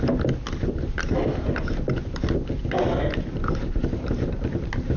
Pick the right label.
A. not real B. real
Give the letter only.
B